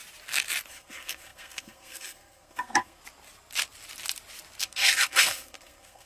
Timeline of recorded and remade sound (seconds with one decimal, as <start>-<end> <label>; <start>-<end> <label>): 0.0-0.7 recorded; 0.7-3.0 remade; 3.0-4.6 recorded; 4.6-6.1 remade